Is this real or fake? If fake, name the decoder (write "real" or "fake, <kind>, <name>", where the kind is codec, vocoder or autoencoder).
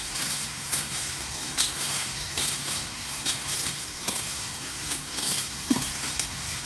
fake, codec, SNAC